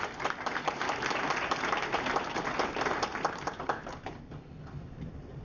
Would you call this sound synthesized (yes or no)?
yes